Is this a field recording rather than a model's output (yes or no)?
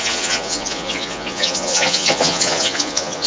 no